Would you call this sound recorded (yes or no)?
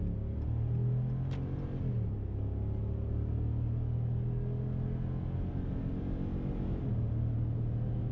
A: yes